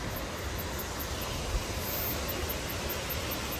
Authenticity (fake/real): real